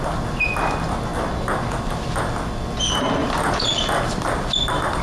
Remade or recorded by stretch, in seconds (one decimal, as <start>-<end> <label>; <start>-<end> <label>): 0.0-5.0 recorded